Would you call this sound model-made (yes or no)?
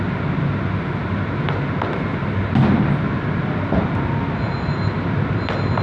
no